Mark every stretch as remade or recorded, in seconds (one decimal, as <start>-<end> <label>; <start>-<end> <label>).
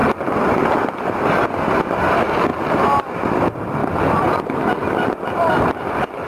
0.0-6.3 recorded